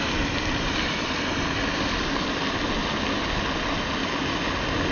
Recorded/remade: recorded